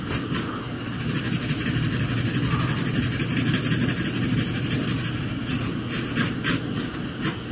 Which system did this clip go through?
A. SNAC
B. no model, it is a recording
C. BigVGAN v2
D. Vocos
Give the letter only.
B